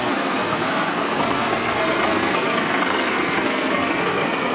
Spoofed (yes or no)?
yes